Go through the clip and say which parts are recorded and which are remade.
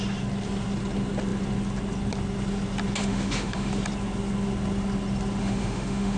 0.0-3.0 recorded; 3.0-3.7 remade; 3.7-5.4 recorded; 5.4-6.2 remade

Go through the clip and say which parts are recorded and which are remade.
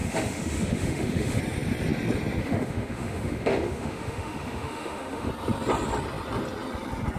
0.0-1.4 remade; 1.4-2.4 recorded; 2.4-5.3 remade; 5.3-7.2 recorded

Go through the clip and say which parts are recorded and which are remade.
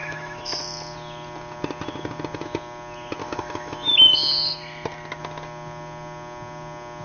0.0-0.6 remade; 0.6-3.2 recorded; 3.2-3.9 remade; 3.9-7.0 recorded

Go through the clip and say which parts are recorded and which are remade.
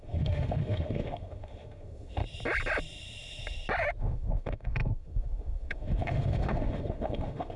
0.0-2.2 remade; 2.2-4.0 recorded; 4.0-7.6 remade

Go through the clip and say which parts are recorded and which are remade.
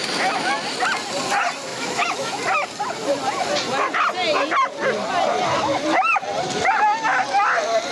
0.0-1.7 recorded; 1.7-2.3 remade; 2.3-7.9 recorded